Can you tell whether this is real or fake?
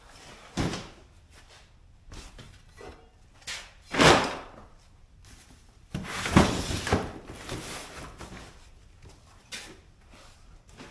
real